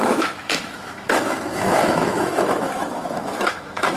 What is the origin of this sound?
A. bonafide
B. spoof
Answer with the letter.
B